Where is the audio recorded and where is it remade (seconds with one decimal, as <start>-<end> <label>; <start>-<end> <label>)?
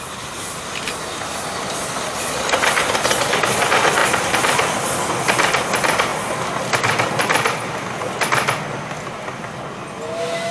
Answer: 0.0-10.5 recorded